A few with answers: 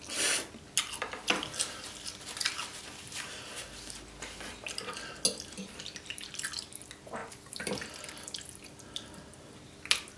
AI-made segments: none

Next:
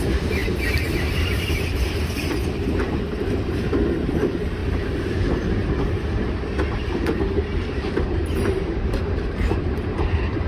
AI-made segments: 0.0-4.6 (vocoder, BigVGAN v2); 7.7-10.5